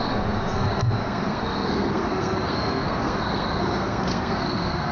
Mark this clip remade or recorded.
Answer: remade